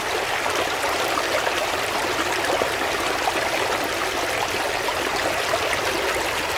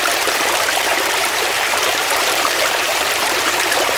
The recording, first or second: first